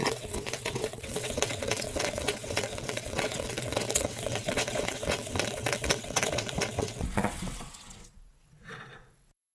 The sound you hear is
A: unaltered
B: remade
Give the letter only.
B